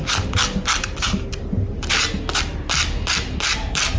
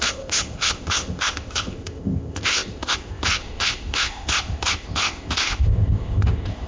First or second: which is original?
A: first